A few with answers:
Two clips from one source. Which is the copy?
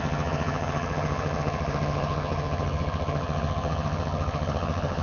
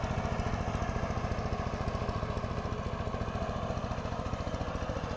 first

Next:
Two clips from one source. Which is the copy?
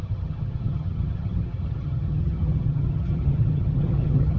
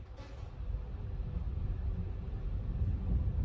first